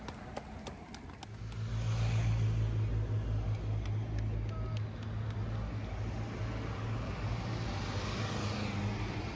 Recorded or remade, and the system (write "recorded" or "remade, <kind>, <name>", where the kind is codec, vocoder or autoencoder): recorded